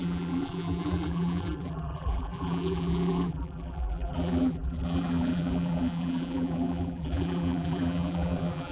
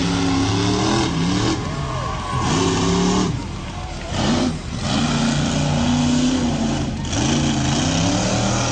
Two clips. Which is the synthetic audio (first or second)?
first